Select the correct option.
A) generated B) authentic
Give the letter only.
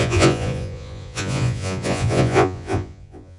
A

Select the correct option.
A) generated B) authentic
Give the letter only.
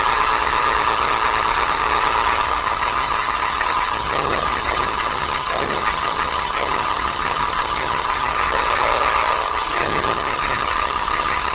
A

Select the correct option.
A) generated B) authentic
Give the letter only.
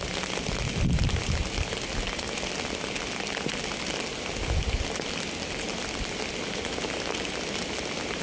B